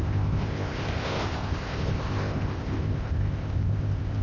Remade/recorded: remade